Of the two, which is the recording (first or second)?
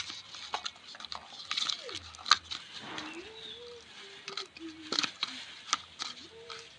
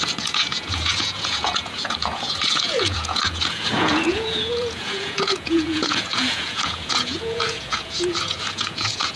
first